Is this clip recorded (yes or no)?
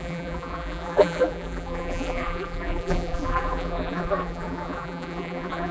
no